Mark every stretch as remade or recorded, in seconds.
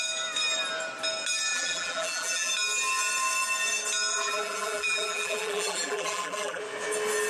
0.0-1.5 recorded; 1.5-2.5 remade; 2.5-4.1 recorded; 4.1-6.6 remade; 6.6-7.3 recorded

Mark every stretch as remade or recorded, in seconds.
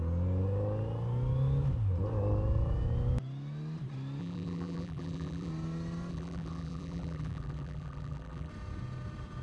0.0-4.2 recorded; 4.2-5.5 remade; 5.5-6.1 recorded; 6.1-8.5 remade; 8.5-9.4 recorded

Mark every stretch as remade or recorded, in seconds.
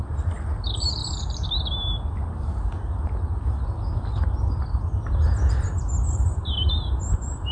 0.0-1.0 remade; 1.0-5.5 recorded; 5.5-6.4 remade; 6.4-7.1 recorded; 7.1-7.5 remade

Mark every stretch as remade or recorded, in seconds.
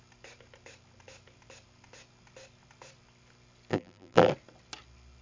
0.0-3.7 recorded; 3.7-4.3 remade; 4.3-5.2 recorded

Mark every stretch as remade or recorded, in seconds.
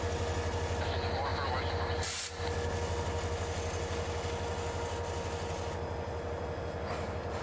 0.0-7.4 recorded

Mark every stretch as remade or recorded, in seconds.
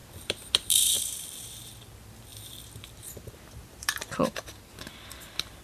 0.0-2.3 remade; 2.3-3.3 recorded; 3.3-4.2 remade; 4.2-4.9 recorded; 4.9-5.6 remade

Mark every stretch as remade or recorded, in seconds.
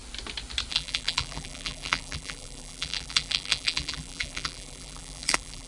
0.0-0.7 recorded; 0.7-5.7 remade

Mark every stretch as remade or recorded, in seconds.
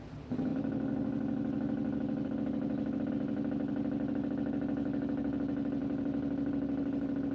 0.0-5.8 recorded; 5.8-6.5 remade; 6.5-7.3 recorded